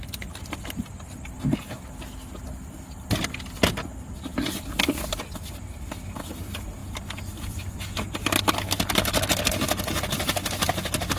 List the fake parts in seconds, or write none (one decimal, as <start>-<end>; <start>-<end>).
6.8-7.8